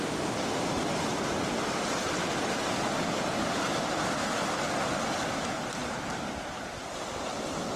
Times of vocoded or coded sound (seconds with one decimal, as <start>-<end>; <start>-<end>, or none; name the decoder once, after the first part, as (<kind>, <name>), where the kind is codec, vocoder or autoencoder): none